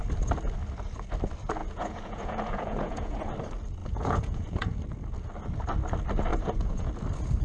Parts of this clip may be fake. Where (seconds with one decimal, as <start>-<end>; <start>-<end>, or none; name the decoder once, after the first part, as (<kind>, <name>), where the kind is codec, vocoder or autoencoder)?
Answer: 1.6-3.3 (vocoder, Vocos); 3.8-4.8; 6.3-6.9